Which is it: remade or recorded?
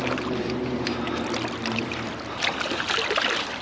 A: recorded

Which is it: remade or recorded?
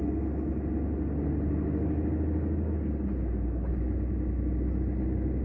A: recorded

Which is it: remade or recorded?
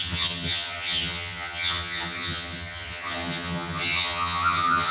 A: remade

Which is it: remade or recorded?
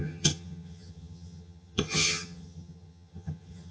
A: remade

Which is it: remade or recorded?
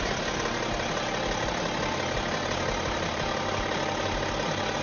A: recorded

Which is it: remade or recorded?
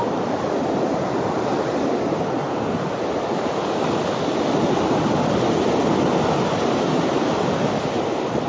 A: recorded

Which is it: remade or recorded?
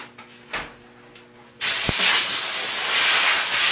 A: recorded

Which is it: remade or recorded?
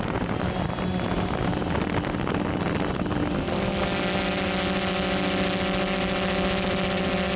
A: recorded